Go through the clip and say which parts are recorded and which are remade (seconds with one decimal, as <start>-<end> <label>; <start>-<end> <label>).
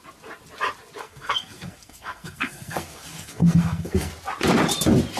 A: 0.0-1.0 recorded; 1.0-4.1 remade; 4.1-5.2 recorded